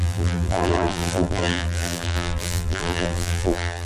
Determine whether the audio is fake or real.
fake